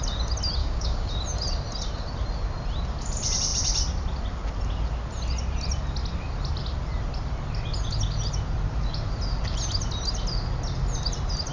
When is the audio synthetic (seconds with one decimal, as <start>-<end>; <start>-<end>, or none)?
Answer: 0.6-1.1